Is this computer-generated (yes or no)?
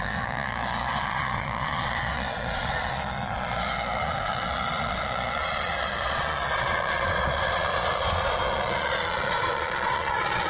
yes